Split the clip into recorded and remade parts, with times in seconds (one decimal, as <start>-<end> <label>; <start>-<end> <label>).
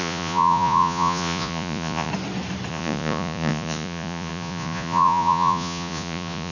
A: 0.0-2.1 remade; 2.1-2.7 recorded; 2.7-6.5 remade